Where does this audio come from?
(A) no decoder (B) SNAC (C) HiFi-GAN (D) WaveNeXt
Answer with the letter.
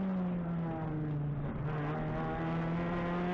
A